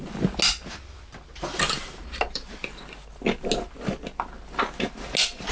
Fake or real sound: real